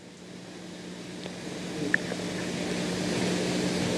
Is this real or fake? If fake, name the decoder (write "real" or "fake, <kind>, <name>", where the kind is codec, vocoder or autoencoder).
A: real